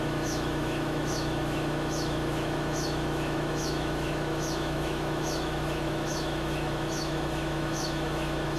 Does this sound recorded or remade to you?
remade